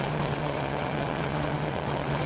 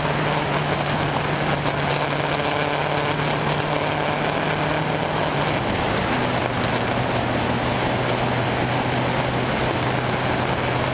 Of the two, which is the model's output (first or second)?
first